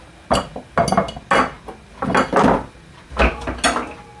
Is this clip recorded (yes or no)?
yes